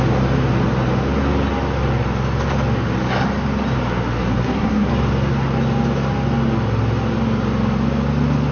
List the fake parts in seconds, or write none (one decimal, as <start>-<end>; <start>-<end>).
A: 4.3-4.9